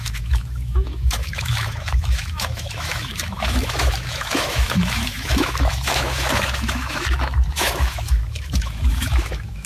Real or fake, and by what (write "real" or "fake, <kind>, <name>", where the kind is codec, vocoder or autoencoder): fake, autoencoder, DAC-VAE